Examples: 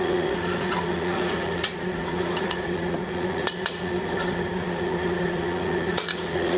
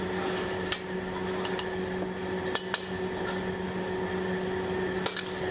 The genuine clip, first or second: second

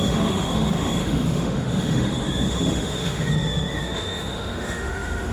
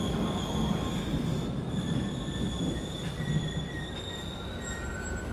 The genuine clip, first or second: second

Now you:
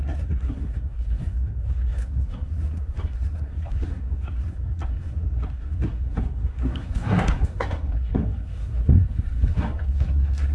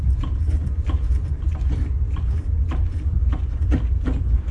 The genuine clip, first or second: second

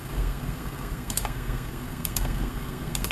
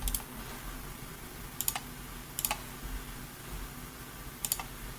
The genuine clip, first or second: second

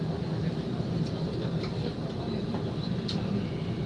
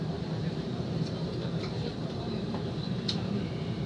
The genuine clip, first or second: first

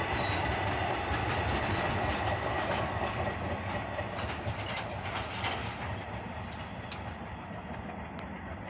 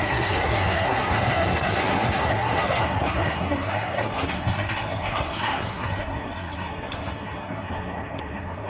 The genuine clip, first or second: first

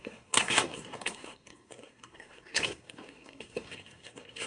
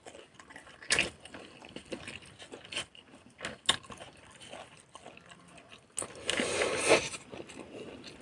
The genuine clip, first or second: second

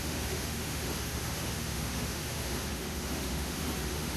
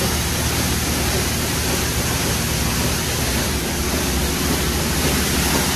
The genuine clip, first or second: second